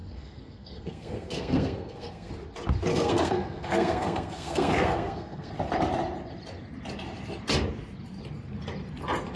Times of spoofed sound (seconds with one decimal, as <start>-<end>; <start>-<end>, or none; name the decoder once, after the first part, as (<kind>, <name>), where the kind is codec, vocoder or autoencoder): 0.0-2.3 (codec, SNAC); 2.9-5.5

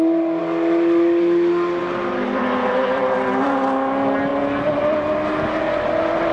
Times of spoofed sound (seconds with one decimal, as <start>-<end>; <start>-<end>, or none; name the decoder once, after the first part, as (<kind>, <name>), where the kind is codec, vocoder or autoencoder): none